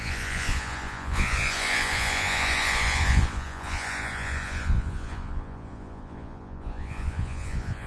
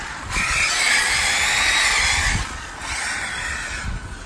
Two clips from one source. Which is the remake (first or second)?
first